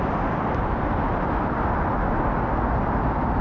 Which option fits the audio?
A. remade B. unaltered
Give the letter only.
B